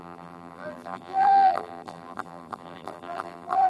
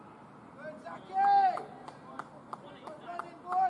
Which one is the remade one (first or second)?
first